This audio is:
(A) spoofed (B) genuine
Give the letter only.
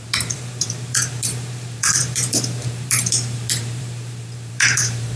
A